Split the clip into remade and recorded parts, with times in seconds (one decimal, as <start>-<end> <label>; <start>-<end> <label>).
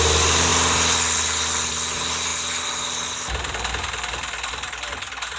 0.0-5.4 recorded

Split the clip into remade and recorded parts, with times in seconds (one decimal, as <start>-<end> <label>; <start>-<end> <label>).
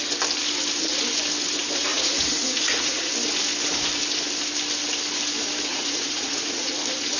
0.0-1.9 recorded; 1.9-3.1 remade; 3.1-5.7 recorded; 5.7-6.7 remade; 6.7-7.2 recorded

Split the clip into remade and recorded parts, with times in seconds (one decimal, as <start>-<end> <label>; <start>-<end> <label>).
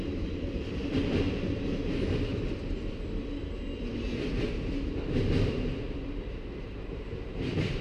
0.0-2.3 remade; 2.3-4.5 recorded; 4.5-7.8 remade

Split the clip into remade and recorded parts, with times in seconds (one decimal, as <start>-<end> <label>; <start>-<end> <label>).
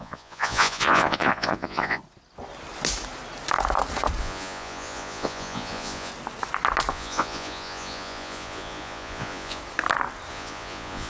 0.0-2.0 remade; 2.0-4.2 recorded; 4.2-6.1 remade; 6.1-6.9 recorded; 6.9-9.6 remade; 9.6-10.3 recorded; 10.3-11.1 remade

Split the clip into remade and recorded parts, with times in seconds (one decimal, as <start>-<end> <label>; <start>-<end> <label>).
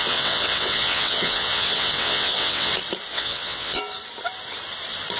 0.0-2.7 remade; 2.7-3.1 recorded; 3.1-3.8 remade; 3.8-5.2 recorded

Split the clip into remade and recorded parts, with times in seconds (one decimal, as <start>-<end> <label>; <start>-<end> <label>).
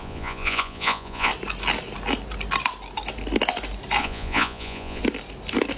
0.0-1.3 remade; 1.3-4.0 recorded; 4.0-5.0 remade; 5.0-5.8 recorded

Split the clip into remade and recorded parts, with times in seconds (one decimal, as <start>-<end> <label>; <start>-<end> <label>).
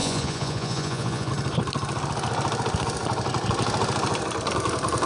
0.0-1.3 remade; 1.3-5.1 recorded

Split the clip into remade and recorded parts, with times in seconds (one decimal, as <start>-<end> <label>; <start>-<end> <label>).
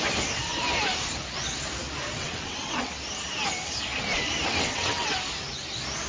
0.0-2.1 recorded; 2.1-2.9 remade; 2.9-4.5 recorded; 4.5-5.1 remade; 5.1-6.1 recorded